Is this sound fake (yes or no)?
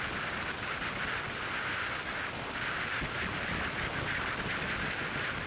no